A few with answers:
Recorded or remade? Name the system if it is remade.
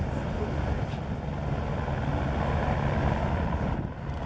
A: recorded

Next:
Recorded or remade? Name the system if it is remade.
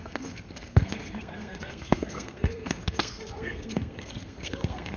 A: remade, codec, SNAC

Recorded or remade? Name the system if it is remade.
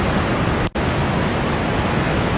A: recorded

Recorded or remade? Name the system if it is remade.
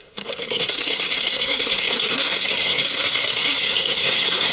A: remade, codec, SNAC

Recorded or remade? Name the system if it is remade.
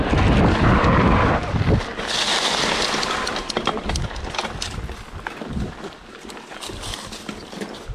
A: recorded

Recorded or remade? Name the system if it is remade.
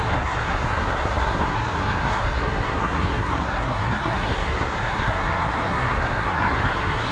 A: remade, codec, SNAC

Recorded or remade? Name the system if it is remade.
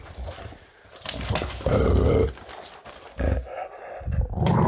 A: remade, vocoder, BigVGAN v2